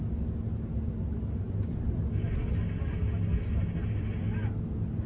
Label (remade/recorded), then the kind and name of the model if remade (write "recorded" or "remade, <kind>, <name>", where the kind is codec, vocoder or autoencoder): recorded